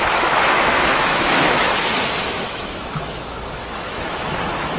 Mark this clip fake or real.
fake